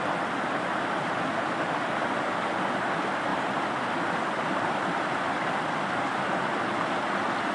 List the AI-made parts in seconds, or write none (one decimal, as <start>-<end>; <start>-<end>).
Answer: 3.3-6.4